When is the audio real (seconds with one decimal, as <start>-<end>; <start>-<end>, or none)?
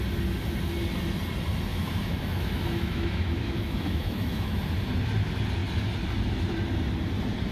0.0-1.7; 4.6-7.5